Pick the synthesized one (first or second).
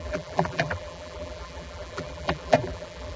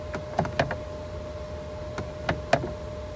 first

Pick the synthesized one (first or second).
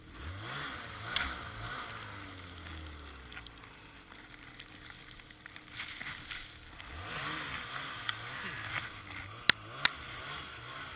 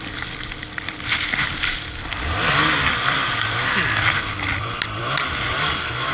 second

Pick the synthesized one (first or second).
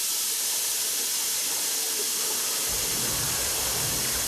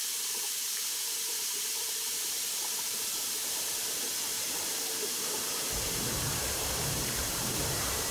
second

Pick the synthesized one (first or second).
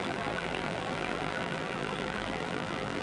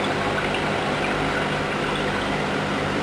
first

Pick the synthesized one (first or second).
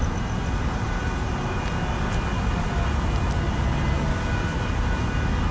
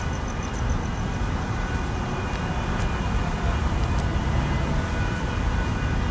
second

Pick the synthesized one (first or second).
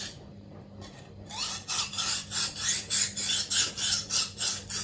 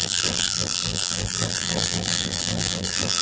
second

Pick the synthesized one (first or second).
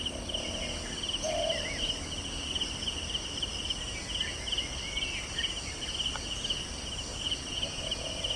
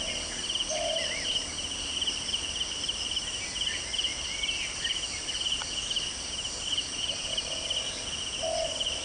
second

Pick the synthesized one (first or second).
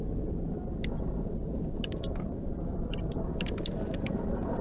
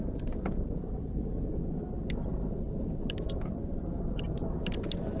first